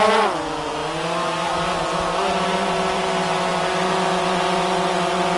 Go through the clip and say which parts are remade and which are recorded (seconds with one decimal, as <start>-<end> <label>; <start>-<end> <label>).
0.0-0.8 recorded; 0.8-3.0 remade; 3.0-5.4 recorded